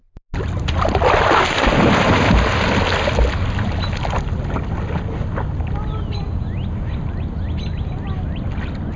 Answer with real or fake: real